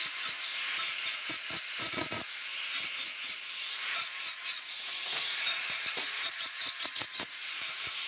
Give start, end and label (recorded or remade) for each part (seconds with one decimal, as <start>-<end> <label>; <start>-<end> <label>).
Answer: 0.0-8.1 remade